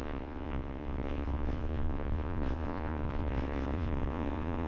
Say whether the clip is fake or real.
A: fake